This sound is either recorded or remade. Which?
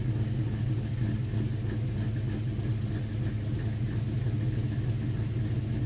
recorded